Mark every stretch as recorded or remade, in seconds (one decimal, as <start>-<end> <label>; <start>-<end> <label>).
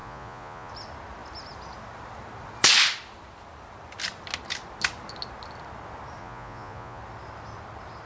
0.0-0.7 remade; 0.7-6.2 recorded; 6.2-7.0 remade; 7.0-8.1 recorded